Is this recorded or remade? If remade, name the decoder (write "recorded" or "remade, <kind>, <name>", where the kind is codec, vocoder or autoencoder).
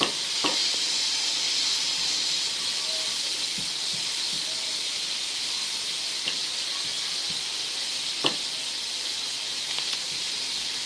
recorded